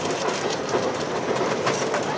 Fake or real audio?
fake